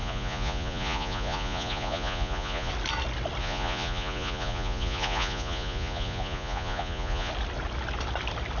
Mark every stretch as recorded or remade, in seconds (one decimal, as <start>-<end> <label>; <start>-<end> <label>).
0.0-2.7 remade; 2.7-3.4 recorded; 3.4-7.3 remade; 7.3-8.6 recorded

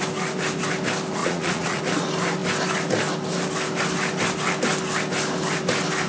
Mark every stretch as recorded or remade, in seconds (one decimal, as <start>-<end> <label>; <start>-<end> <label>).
0.0-1.2 recorded; 1.2-1.8 remade; 1.8-6.1 recorded